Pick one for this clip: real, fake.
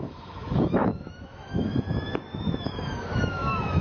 fake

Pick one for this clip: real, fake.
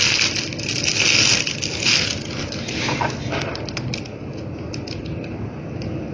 real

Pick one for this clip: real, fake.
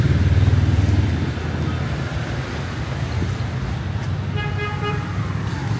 real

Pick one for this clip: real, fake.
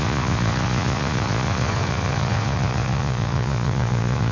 fake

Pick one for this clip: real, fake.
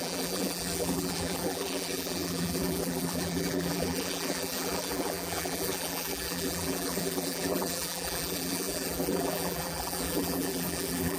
fake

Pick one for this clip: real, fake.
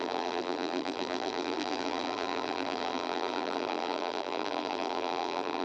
fake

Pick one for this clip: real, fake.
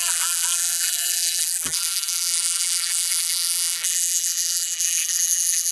fake